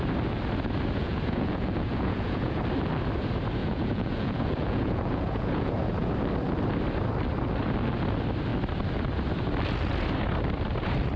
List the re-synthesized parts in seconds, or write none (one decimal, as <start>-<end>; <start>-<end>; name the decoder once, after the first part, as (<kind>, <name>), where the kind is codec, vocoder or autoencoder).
1.0-2.6 (vocoder, Vocos); 3.6-6.1